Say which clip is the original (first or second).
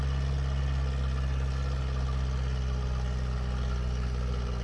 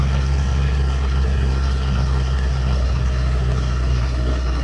first